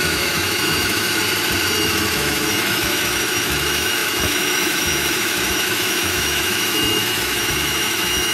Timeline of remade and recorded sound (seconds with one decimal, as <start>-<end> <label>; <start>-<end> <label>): 0.0-1.2 remade; 1.2-1.8 recorded; 1.8-8.3 remade